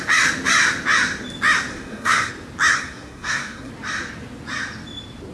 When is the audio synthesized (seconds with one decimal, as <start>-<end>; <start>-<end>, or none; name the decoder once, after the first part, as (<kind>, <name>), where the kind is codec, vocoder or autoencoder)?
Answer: 1.7-2.3 (codec, SNAC); 2.7-3.7